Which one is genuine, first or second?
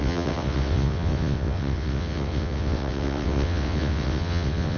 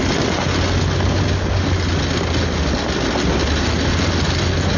second